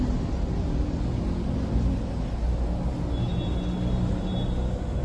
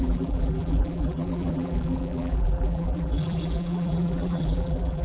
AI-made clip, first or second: second